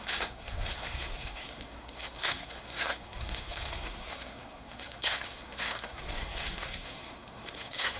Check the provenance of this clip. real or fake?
fake